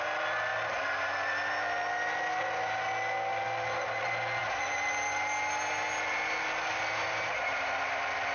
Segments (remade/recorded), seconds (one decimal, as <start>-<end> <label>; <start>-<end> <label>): 0.0-8.3 recorded